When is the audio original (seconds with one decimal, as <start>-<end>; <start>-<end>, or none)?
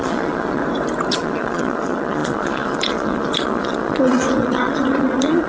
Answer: 0.6-1.1